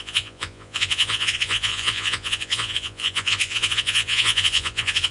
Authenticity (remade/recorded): remade